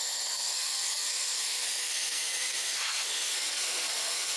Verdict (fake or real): fake